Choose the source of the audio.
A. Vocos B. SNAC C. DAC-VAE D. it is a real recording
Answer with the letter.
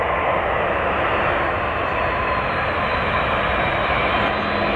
D